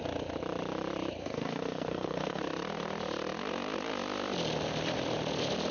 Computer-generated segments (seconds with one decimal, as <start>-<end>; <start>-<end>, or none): 1.2-2.4